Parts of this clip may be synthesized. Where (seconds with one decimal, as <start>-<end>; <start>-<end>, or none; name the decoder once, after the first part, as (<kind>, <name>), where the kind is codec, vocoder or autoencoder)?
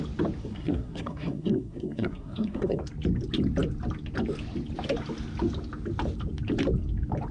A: 0.4-2.8 (codec, SNAC)